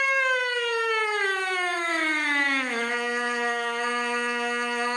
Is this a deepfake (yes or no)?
yes